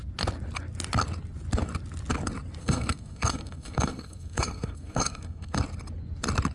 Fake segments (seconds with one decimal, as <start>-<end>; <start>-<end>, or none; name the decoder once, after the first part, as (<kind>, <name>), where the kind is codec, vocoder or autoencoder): 2.6-5.6 (codec, SNAC)